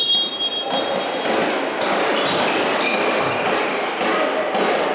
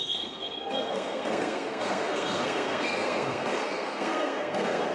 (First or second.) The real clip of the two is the first